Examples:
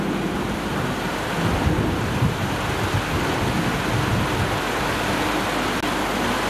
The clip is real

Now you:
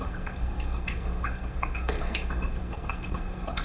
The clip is fake